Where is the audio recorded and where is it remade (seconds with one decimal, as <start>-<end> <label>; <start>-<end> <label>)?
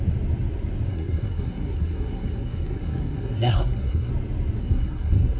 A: 0.0-0.9 recorded; 0.9-4.1 remade; 4.1-4.6 recorded; 4.6-5.4 remade